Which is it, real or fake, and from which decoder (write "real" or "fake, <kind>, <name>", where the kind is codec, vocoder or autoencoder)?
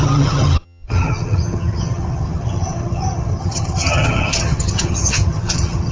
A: fake, vocoder, HiFi-GAN